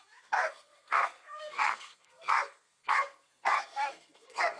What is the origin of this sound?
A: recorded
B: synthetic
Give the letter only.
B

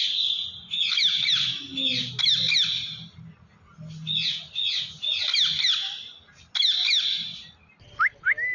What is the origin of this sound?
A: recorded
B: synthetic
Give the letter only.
A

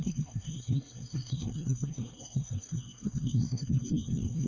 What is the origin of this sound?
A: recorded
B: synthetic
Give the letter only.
B